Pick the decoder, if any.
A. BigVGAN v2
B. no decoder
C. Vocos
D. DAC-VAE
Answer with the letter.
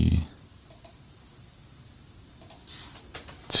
A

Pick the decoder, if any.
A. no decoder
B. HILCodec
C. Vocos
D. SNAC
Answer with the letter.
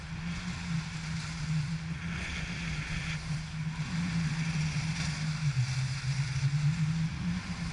A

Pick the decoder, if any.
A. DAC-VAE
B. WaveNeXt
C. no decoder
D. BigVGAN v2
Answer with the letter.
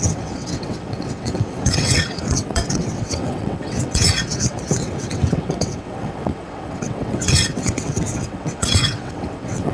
B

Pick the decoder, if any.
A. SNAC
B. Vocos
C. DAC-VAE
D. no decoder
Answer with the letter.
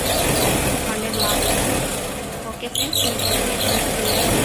D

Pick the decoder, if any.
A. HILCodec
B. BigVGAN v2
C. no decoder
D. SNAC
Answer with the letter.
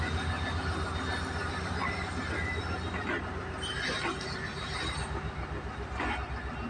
C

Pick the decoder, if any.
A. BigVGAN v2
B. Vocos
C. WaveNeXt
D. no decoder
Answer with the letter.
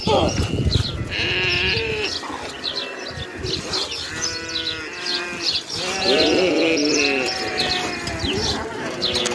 D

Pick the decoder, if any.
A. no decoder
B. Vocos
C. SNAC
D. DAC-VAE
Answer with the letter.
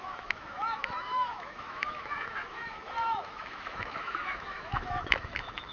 D